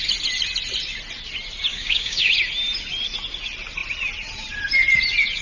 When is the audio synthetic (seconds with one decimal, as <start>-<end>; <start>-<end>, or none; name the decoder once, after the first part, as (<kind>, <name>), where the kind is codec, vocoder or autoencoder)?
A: 1.7-2.3 (codec, DAC)